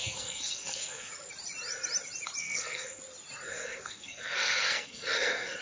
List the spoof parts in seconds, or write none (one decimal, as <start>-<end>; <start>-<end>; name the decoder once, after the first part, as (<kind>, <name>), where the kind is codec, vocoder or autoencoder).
0.0-1.1 (codec, SNAC); 2.4-3.0; 3.5-5.6